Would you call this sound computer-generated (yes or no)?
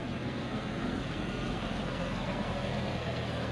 yes